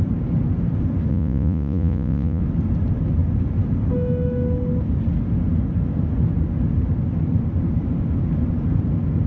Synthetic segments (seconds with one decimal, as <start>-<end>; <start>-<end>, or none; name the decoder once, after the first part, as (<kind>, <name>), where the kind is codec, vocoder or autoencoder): 1.1-2.4 (vocoder, Vocos)